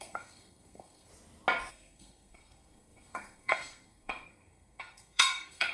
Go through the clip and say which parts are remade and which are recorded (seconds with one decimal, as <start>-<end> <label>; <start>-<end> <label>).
0.0-1.1 remade; 1.1-1.7 recorded; 1.7-5.7 remade